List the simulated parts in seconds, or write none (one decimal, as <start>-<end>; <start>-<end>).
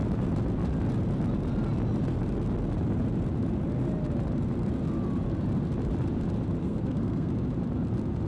6.6-7.3